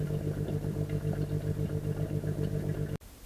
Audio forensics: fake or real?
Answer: real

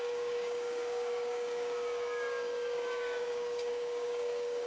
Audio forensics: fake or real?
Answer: fake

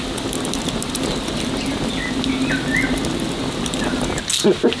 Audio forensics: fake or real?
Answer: real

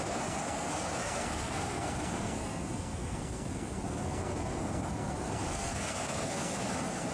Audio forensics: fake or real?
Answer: fake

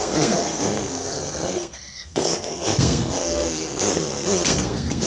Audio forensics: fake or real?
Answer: fake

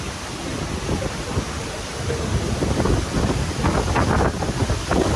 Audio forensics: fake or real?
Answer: real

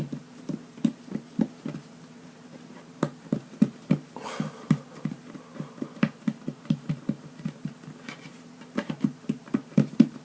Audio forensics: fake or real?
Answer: fake